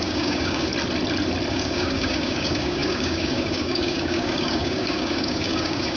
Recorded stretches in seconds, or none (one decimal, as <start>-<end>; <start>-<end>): 0.7-1.5